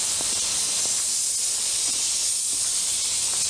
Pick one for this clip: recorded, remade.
recorded